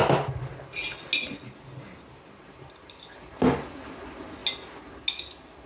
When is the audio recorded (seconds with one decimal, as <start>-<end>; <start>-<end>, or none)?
0.0-5.7